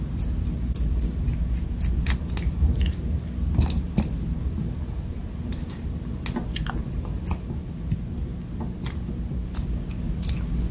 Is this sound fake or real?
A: real